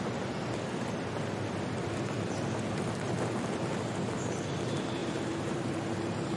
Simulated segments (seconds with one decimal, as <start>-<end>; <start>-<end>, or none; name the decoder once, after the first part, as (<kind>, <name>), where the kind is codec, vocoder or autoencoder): 5.0-6.4 (vocoder, BigVGAN v2)